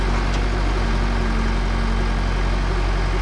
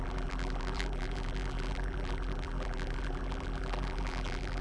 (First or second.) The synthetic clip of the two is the second